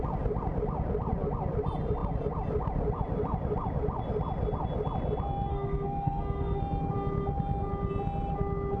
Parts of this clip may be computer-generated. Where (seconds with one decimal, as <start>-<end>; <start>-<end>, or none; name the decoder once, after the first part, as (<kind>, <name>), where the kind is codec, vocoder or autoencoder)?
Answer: 5.5-6.6 (codec, SNAC)